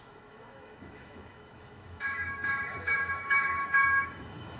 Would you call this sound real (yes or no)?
no